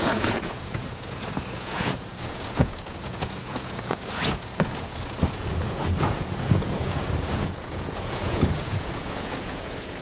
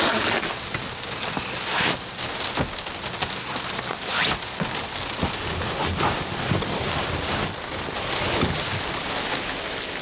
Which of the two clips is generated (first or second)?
first